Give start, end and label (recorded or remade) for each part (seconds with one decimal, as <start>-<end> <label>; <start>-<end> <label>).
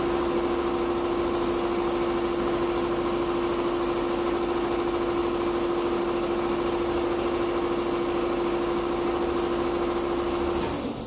0.0-11.1 recorded